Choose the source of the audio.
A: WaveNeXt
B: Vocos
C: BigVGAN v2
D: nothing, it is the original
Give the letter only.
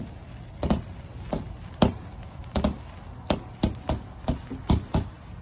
D